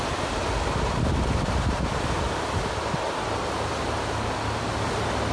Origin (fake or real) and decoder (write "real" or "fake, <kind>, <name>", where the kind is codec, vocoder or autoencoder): real